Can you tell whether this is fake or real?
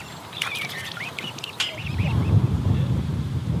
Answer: fake